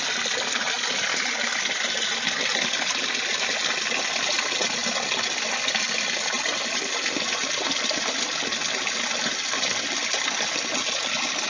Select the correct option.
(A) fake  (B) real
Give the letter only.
B